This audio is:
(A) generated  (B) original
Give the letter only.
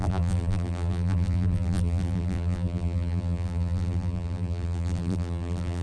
A